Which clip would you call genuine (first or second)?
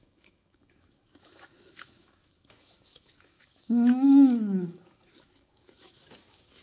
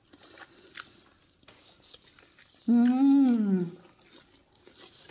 second